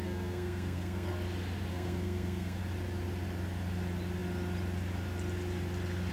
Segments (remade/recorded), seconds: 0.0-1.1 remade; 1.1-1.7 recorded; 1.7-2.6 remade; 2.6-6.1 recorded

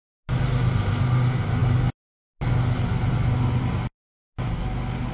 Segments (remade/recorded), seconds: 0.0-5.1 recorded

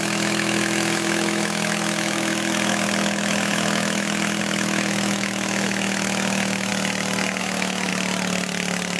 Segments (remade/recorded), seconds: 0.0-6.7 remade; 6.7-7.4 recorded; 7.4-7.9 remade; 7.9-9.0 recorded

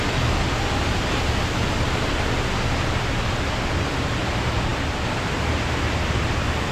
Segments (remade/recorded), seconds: 0.0-6.7 recorded

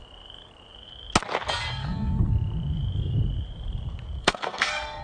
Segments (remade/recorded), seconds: 0.0-1.8 recorded; 1.8-2.3 remade; 2.3-4.2 recorded; 4.2-5.0 remade

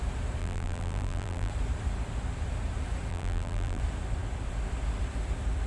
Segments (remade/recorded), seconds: 0.0-0.4 recorded; 0.4-1.5 remade; 1.5-3.1 recorded; 3.1-3.8 remade; 3.8-5.7 recorded

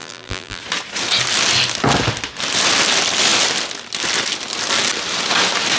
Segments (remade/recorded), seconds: 0.0-0.6 remade; 0.6-5.8 recorded